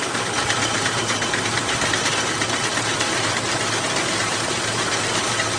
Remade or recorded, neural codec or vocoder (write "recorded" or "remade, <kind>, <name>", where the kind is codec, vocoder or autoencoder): remade, vocoder, BigVGAN v2